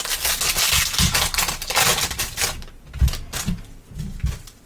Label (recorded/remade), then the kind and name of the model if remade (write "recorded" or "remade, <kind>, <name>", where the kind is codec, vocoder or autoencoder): recorded